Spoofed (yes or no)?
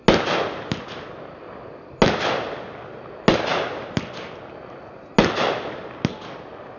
no